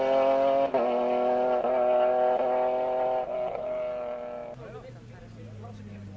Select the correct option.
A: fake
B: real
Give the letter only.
B